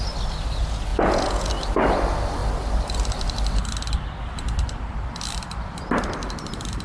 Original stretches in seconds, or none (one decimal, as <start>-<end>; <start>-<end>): 0.0-0.9; 1.5-6.8